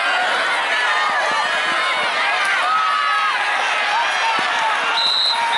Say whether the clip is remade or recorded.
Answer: recorded